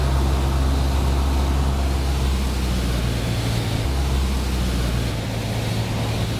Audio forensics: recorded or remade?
recorded